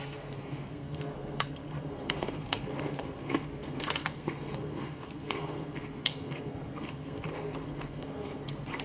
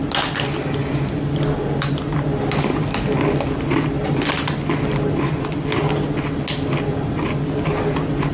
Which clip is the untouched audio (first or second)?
second